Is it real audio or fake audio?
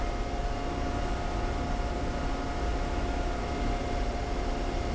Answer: real